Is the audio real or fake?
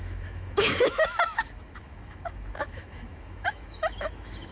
fake